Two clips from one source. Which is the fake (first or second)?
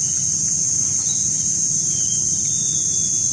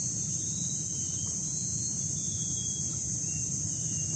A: second